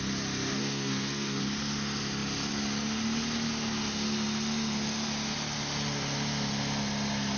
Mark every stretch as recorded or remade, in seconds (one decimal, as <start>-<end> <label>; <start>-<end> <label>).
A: 0.0-0.6 recorded; 0.6-1.4 remade; 1.4-7.4 recorded